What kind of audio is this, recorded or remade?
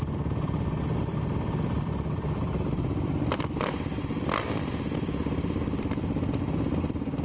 remade